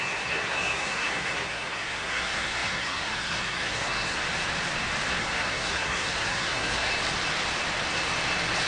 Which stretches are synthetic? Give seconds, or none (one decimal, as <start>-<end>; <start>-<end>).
0.0-4.2; 5.2-6.9